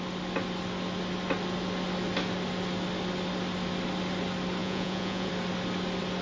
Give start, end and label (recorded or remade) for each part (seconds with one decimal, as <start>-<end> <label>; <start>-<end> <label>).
0.0-4.6 recorded; 4.6-5.3 remade; 5.3-6.2 recorded